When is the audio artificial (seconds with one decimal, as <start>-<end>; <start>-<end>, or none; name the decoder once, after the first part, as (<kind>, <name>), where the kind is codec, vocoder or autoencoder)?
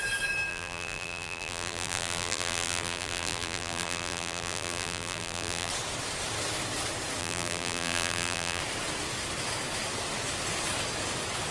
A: 0.5-5.7 (vocoder, BigVGAN v2); 7.2-8.6